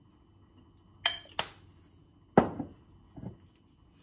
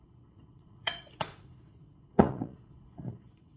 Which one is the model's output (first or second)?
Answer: second